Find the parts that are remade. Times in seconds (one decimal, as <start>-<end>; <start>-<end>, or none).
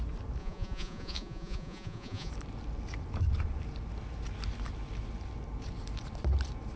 0.4-2.3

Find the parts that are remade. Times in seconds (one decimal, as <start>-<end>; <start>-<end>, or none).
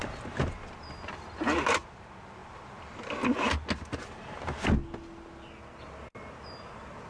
none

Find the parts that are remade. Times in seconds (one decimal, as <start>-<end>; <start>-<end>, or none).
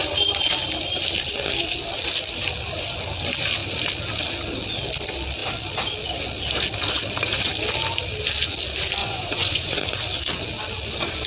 9.0-9.8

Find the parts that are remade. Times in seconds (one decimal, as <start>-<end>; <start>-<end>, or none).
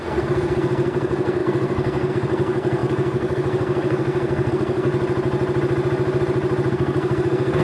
0.0-4.9; 6.7-7.6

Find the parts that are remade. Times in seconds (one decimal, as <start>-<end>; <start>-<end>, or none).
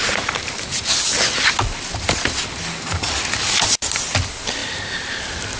4.6-5.1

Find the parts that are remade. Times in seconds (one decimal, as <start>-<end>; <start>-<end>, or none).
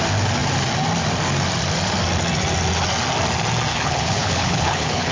3.7-5.1